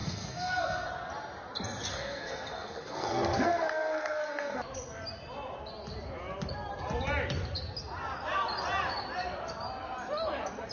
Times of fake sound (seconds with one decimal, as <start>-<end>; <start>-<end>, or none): 0.0-0.9; 1.9-4.6